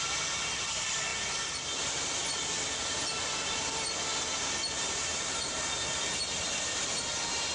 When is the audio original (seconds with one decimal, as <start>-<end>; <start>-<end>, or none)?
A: 1.1-2.3; 4.1-6.3